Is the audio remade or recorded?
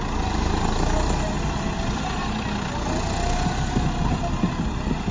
recorded